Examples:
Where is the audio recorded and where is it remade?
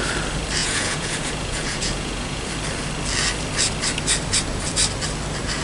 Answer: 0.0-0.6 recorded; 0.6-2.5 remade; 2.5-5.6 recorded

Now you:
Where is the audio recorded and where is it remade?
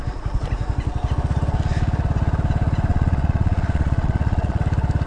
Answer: 0.0-2.9 recorded; 2.9-4.6 remade; 4.6-5.1 recorded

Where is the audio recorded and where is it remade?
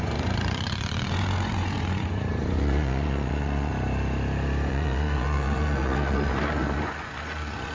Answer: 0.0-3.7 remade; 3.7-4.7 recorded; 4.7-7.7 remade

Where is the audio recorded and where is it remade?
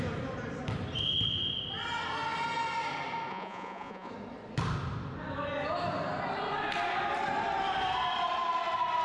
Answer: 0.0-3.3 recorded; 3.3-4.1 remade; 4.1-9.0 recorded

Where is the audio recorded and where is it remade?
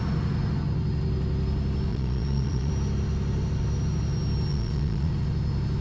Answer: 0.0-1.9 recorded; 1.9-2.7 remade; 2.7-4.5 recorded; 4.5-5.1 remade; 5.1-5.8 recorded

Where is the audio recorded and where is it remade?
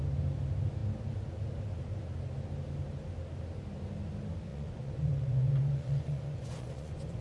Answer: 0.0-4.5 recorded; 4.5-7.2 remade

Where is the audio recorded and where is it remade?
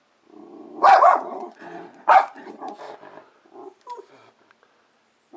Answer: 0.0-0.4 recorded; 0.4-2.7 remade; 2.7-5.4 recorded